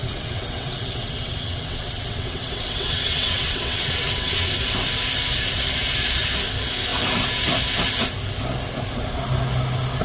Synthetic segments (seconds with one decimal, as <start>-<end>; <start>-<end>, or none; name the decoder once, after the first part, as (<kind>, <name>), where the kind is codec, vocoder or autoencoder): 0.0-4.6 (vocoder, WaveNeXt)